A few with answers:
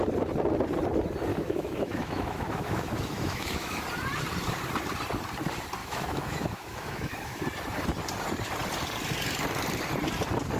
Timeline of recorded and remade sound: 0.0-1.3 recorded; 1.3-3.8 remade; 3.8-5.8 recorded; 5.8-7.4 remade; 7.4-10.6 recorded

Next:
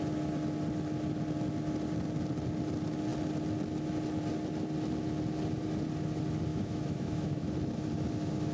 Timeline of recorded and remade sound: 0.0-6.5 recorded; 6.5-7.5 remade; 7.5-8.5 recorded

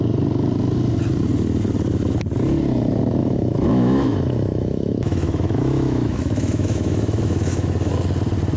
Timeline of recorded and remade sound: 0.0-3.2 recorded; 3.2-7.9 remade; 7.9-8.6 recorded

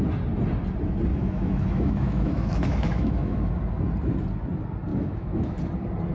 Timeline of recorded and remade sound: 0.0-1.1 recorded; 1.1-3.5 remade; 3.5-4.9 recorded; 4.9-5.6 remade; 5.6-6.1 recorded

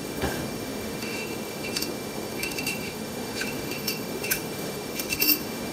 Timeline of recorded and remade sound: 0.0-5.7 remade

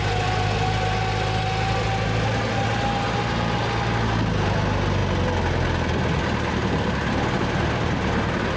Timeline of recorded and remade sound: 0.0-8.6 recorded